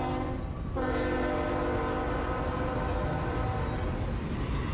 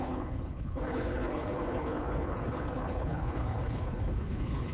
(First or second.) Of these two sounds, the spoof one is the second